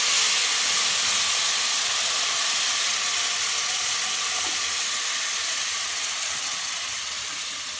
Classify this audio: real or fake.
real